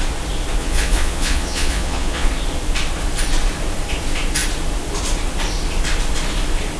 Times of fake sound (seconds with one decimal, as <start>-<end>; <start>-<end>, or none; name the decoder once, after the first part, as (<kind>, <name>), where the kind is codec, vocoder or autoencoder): 0.6-2.3 (vocoder, Vocos)